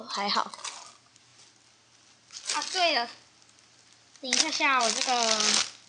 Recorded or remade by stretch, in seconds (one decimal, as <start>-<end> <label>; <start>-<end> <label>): 0.0-5.9 recorded